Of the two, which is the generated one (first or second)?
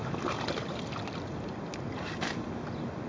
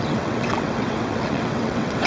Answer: second